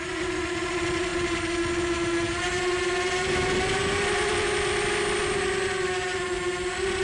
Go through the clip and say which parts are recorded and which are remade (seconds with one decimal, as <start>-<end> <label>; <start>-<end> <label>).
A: 0.0-7.0 recorded